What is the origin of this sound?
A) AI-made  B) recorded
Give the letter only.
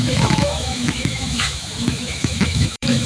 A